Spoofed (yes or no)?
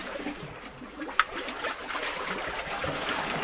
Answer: no